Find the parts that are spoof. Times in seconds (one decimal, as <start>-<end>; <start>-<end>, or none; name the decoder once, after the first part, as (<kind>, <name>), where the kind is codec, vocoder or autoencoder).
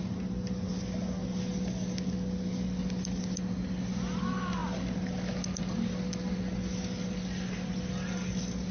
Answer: none